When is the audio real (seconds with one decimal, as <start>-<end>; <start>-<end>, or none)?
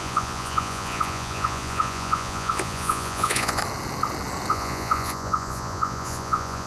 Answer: 3.6-4.5